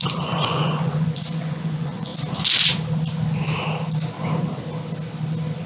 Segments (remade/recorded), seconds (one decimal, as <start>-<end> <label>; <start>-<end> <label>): 0.0-2.1 remade; 2.1-5.7 recorded